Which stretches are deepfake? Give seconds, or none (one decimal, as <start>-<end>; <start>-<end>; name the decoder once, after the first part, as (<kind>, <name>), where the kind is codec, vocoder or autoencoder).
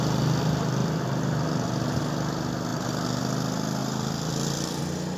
0.8-1.5 (vocoder, BigVGAN v2); 2.7-3.2; 3.8-4.8